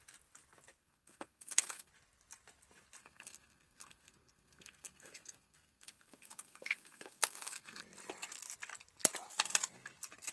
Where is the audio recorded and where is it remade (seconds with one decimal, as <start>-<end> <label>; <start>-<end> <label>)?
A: 0.0-0.8 recorded; 0.8-1.9 remade; 1.9-3.0 recorded; 3.0-7.8 remade; 7.8-10.3 recorded